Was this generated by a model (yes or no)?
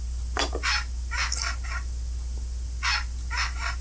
no